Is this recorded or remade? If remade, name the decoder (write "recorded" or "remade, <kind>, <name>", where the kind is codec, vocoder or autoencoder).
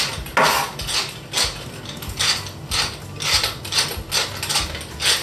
recorded